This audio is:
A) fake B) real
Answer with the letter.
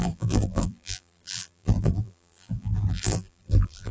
A